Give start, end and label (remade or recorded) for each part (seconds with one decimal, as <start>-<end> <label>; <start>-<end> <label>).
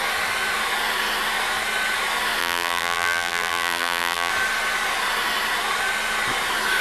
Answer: 0.0-2.4 recorded; 2.4-4.3 remade; 4.3-6.8 recorded